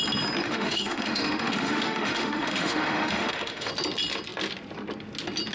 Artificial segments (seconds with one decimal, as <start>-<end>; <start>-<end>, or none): 0.4-3.7